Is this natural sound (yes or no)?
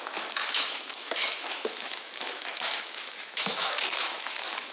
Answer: no